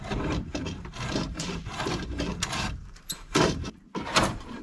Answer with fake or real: fake